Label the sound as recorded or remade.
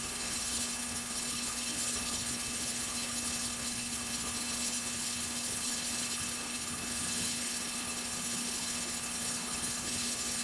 remade